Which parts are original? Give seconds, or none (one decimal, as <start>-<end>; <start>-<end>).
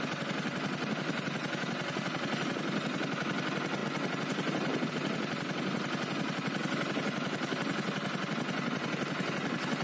0.0-9.8